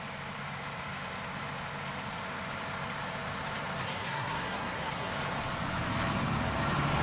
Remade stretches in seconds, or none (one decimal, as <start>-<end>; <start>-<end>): 3.8-5.1

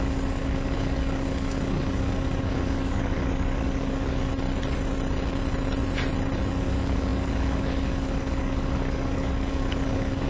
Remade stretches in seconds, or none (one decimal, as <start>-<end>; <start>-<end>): 0.0-4.3; 6.6-10.3